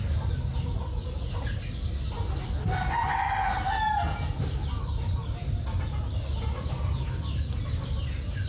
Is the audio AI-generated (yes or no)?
no